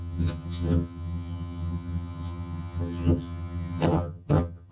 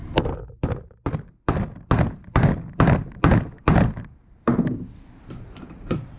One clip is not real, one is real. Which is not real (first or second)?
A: first